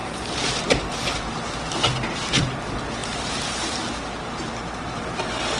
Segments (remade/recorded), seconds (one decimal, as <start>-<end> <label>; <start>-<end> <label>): 0.0-1.0 remade; 1.0-3.0 recorded; 3.0-4.5 remade; 4.5-5.6 recorded